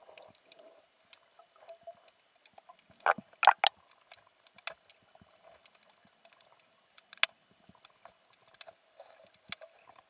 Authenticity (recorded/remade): recorded